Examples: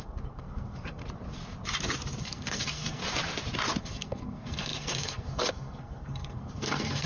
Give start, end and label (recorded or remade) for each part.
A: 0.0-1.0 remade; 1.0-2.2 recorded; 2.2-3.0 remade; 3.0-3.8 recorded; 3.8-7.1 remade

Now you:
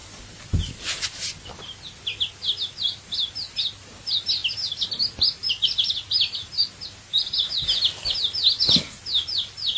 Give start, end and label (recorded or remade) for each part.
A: 0.0-9.8 recorded

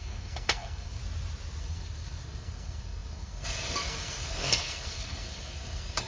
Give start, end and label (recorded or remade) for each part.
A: 0.0-1.0 remade; 1.0-1.6 recorded; 1.6-6.1 remade

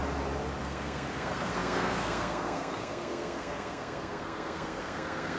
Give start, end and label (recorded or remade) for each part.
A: 0.0-0.6 recorded; 0.6-5.4 remade

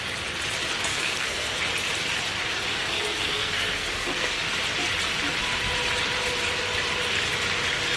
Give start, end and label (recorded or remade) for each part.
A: 0.0-0.9 recorded; 0.9-1.6 remade; 1.6-2.7 recorded; 2.7-4.4 remade; 4.4-8.0 recorded